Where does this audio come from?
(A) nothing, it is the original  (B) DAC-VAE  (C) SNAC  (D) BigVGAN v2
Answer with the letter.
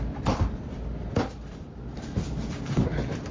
A